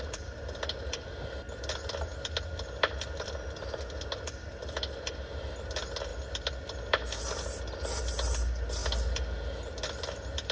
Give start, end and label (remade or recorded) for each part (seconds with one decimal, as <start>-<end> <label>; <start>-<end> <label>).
0.0-10.5 recorded